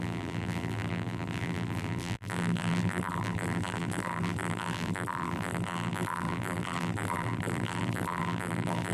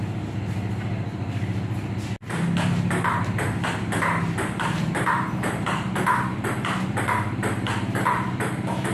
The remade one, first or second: first